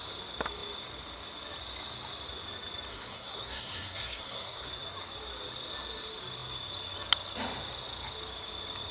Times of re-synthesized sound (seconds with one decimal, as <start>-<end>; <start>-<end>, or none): 2.9-4.7